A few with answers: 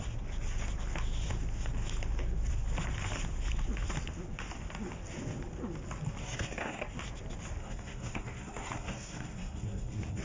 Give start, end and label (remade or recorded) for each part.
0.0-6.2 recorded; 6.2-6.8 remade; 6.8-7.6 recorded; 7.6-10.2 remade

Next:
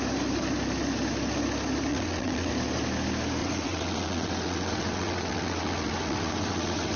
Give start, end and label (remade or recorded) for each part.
0.0-1.9 recorded; 1.9-2.5 remade; 2.5-3.4 recorded; 3.4-7.0 remade

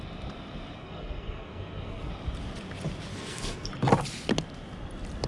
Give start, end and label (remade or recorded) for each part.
0.0-0.8 recorded; 0.8-2.1 remade; 2.1-3.1 recorded; 3.1-3.7 remade; 3.7-5.3 recorded